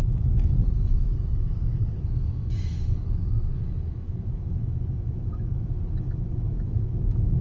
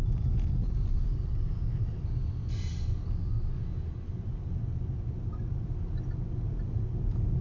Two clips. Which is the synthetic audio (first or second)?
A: first